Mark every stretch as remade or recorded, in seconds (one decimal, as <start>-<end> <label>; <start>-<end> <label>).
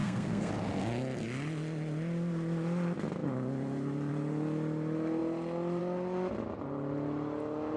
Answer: 0.0-0.5 remade; 0.5-7.8 recorded